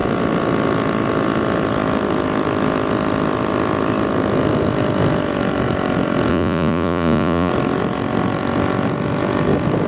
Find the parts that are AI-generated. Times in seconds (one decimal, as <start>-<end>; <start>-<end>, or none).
6.3-7.5